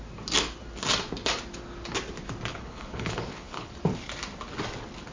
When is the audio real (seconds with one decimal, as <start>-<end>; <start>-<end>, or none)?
0.0-2.5; 3.7-5.1

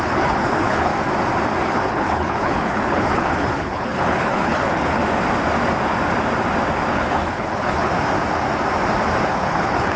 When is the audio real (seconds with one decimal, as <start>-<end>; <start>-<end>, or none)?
0.9-1.6; 5.0-6.9; 7.9-9.3